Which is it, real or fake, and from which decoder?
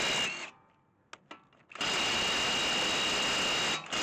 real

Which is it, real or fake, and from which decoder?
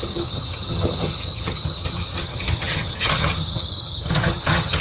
fake, vocoder, HiFi-GAN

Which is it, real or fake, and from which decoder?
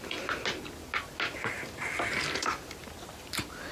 real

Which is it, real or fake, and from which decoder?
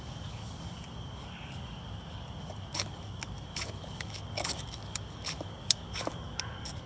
fake, codec, DAC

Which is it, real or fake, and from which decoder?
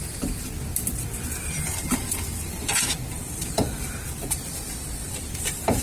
fake, vocoder, BigVGAN v2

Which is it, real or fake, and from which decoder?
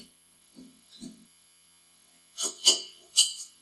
fake, vocoder, WaveNeXt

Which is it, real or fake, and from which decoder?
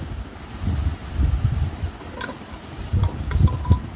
real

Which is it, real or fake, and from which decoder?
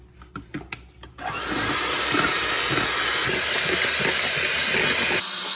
real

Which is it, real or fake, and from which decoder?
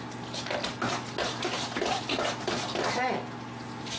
real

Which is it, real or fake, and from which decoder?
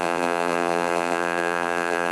fake, vocoder, BigVGAN v2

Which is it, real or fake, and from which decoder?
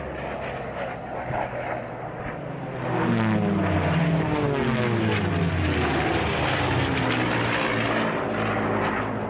real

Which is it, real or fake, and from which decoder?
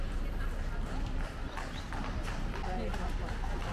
real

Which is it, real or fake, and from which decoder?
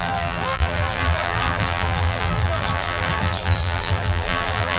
fake, vocoder, BigVGAN v2